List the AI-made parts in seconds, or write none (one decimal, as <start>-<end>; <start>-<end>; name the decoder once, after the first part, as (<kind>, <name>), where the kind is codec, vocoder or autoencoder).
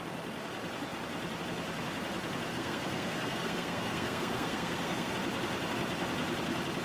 2.5-5.1 (codec, SNAC)